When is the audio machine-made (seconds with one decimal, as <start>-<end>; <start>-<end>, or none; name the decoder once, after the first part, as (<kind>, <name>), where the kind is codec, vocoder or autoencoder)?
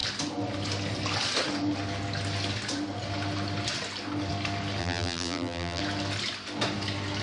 4.8-5.8 (vocoder, BigVGAN v2)